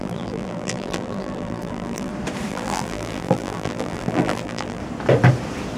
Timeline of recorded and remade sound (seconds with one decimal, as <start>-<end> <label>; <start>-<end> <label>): 0.0-2.1 remade; 2.1-2.5 recorded; 2.5-4.8 remade; 4.8-5.8 recorded